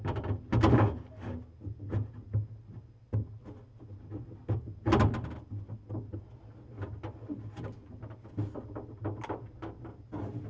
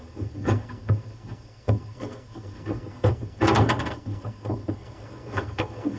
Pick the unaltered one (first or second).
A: first